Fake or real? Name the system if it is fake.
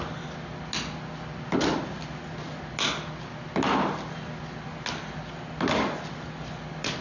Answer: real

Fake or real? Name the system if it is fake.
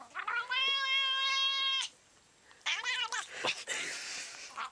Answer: real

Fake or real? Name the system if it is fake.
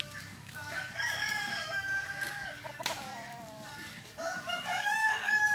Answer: fake, codec, DAC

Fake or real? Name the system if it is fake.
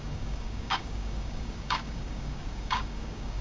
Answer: fake, codec, DAC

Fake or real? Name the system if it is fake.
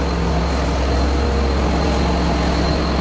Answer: real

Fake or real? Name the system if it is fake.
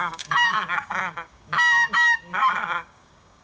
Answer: fake, codec, DAC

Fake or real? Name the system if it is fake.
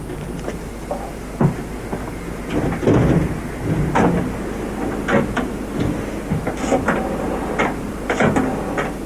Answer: real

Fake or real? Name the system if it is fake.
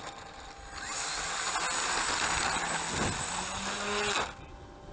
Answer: real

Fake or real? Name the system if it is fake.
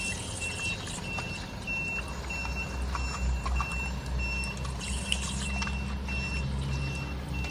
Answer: real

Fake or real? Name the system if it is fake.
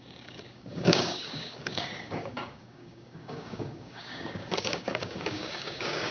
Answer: fake, codec, DAC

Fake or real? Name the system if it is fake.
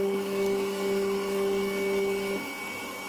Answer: fake, codec, DAC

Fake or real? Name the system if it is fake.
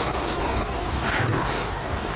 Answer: fake, codec, DAC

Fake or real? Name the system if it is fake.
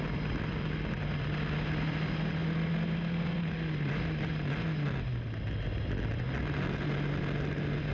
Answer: real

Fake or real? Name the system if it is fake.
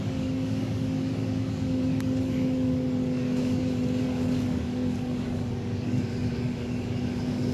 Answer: fake, codec, DAC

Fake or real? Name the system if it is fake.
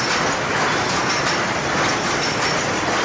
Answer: real